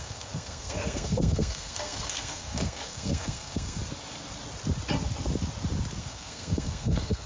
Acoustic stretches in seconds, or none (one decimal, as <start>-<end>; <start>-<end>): 3.8-6.0